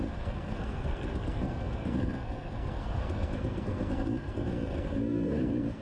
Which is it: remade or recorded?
remade